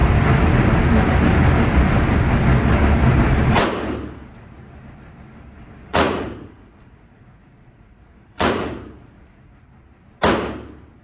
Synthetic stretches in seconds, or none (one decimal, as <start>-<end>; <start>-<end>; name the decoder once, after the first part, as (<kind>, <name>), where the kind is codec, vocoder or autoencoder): 5.9-9.6 (vocoder, Vocos)